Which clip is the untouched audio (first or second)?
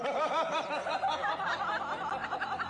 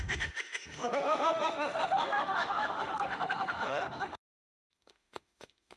first